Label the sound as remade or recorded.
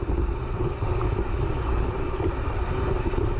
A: recorded